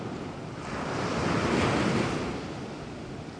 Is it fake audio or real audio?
real